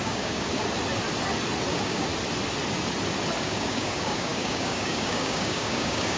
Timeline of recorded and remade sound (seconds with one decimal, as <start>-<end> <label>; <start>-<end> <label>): 0.0-0.5 remade; 0.5-1.7 recorded; 1.7-2.1 remade; 2.1-3.4 recorded; 3.4-6.2 remade